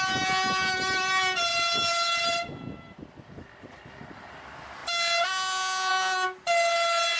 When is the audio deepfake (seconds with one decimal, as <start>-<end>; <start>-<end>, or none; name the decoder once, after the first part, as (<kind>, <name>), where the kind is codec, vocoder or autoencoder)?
none